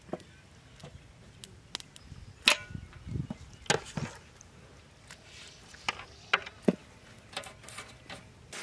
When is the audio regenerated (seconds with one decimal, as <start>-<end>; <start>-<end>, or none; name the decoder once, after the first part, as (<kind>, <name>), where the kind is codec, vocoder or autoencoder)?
none